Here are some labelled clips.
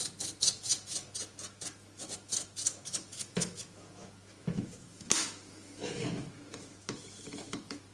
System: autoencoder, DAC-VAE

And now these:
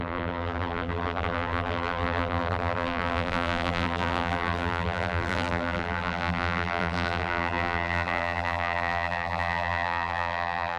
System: vocoder, BigVGAN v2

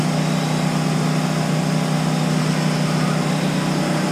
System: none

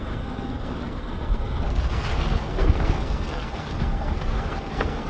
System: codec, SNAC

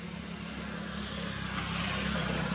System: none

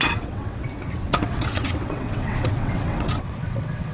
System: vocoder, WaveNeXt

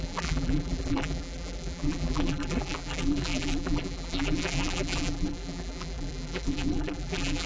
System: vocoder, BigVGAN v2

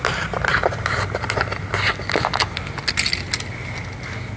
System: none